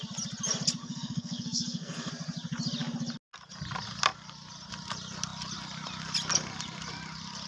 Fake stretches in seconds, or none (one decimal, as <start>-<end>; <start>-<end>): 0.8-2.1